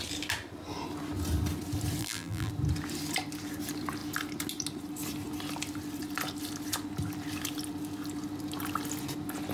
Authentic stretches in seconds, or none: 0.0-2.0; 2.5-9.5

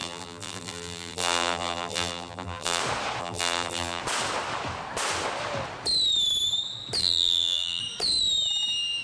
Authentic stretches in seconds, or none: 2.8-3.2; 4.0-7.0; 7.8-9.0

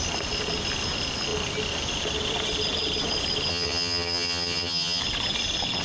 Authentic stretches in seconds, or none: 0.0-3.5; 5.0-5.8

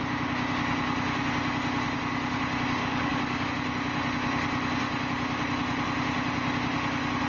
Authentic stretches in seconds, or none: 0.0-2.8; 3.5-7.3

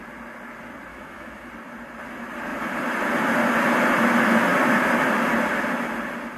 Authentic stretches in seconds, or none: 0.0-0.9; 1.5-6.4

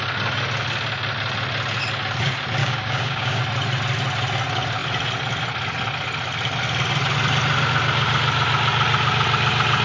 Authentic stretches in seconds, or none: 0.0-2.6; 3.4-9.8

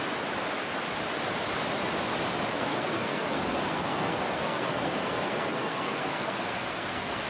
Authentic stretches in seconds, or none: 0.0-2.5